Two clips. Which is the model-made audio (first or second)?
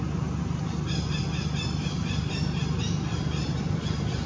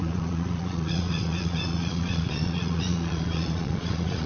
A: second